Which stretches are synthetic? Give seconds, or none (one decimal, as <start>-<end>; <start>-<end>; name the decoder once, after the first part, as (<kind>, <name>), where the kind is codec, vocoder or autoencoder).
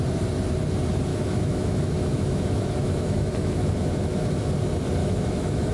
1.1-4.5 (autoencoder, DAC-VAE); 5.0-5.7